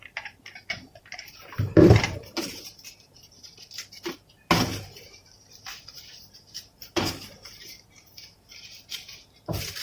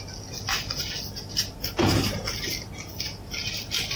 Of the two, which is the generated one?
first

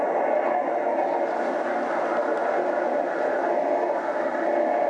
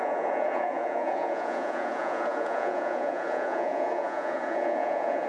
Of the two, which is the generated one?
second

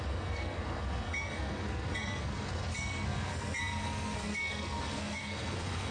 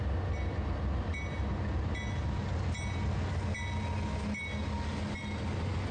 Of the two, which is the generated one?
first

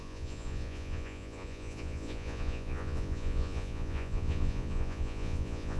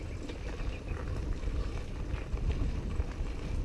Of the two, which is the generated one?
first